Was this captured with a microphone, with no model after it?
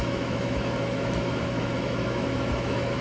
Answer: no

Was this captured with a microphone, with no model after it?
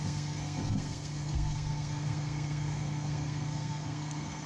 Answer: no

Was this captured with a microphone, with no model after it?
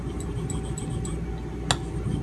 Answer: yes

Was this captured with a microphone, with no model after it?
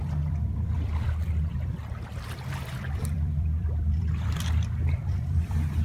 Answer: no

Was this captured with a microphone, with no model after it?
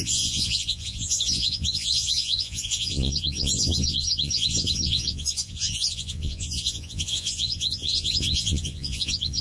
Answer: no